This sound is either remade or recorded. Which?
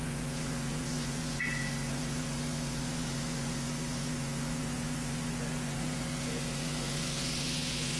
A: remade